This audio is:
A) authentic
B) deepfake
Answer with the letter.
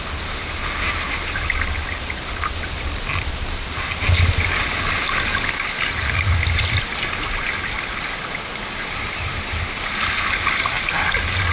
A